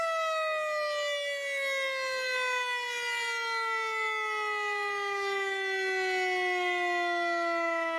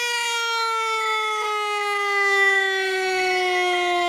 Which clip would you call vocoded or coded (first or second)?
second